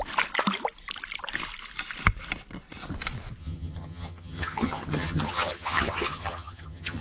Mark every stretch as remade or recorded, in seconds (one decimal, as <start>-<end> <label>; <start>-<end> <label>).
0.0-3.4 recorded; 3.4-7.0 remade